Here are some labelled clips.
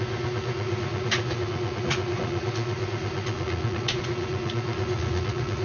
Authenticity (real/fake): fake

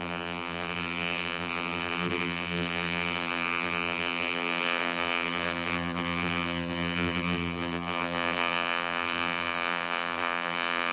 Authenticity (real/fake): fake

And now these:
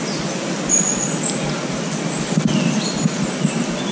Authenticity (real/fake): real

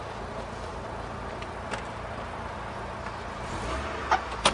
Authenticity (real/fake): real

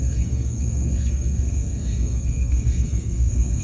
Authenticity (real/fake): fake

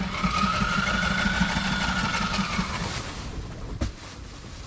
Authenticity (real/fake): real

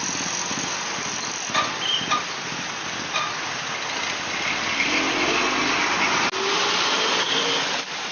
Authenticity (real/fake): real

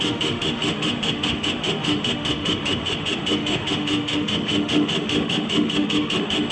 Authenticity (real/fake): fake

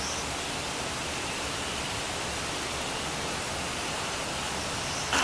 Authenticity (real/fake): real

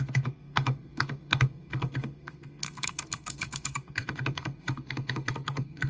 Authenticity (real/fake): fake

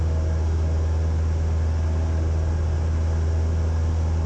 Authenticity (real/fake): real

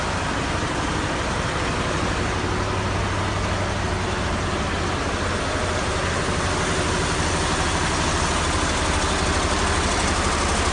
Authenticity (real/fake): real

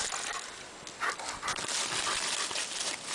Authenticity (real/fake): real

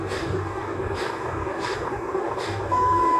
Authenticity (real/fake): fake